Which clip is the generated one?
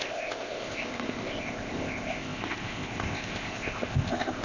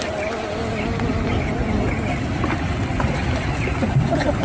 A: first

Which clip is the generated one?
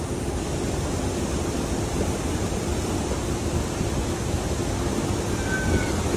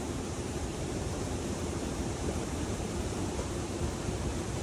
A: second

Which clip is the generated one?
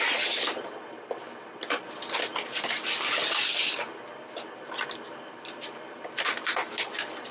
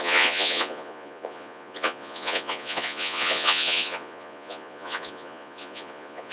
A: second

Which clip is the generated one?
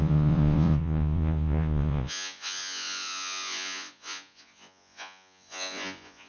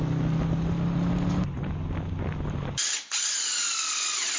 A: first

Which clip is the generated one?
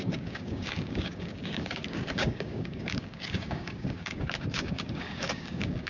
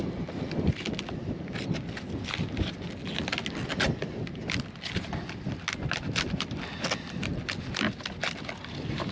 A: first